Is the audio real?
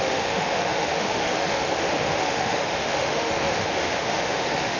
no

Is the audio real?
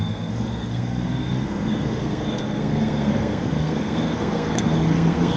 no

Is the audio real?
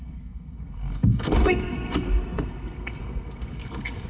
no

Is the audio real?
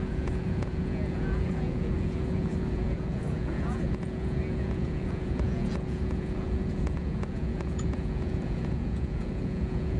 no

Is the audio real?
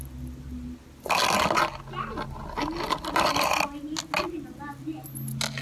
yes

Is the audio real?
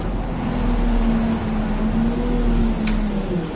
yes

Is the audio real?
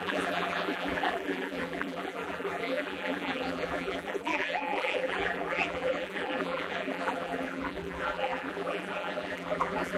no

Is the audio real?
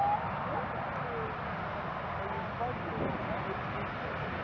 yes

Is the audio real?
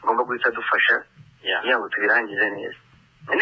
no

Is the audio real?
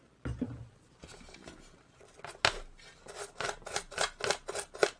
yes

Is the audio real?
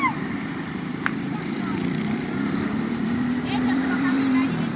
no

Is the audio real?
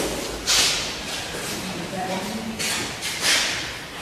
yes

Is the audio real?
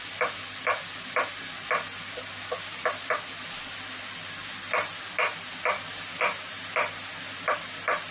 yes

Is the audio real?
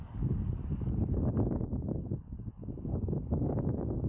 no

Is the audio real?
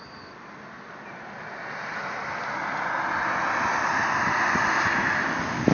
yes